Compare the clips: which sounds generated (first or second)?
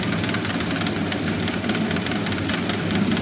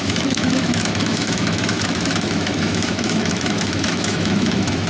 second